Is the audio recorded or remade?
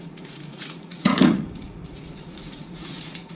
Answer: remade